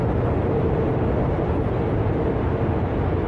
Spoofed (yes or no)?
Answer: no